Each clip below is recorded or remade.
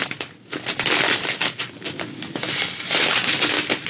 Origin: recorded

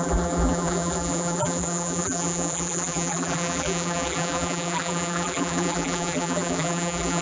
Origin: remade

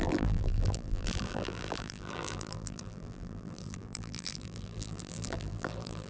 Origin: remade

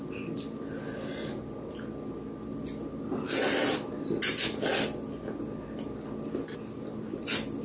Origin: recorded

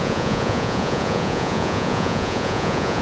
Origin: remade